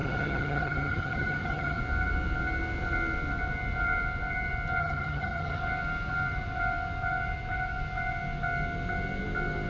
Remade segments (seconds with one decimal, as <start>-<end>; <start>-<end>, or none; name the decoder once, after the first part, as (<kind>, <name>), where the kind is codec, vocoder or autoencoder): 0.0-1.8 (vocoder, HiFi-GAN); 4.8-5.6